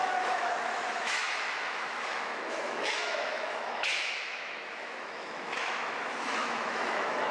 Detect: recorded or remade remade